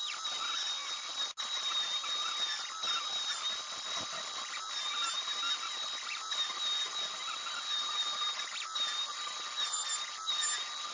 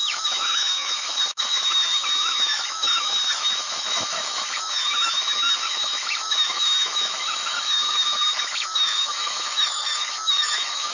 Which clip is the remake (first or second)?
second